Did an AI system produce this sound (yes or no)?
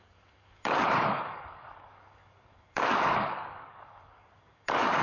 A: yes